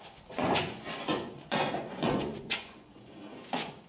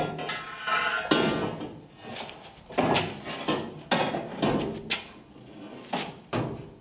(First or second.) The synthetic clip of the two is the first